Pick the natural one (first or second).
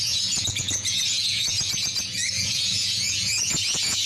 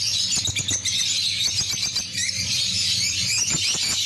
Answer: second